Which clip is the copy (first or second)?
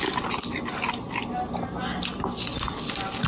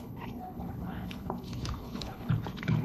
second